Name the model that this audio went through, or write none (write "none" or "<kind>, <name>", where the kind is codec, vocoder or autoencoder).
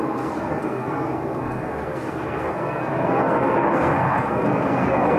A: codec, SNAC